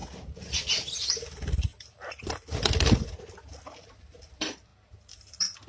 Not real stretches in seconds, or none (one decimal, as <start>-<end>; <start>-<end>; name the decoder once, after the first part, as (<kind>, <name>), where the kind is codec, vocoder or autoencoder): 0.5-4.7 (vocoder, BigVGAN v2)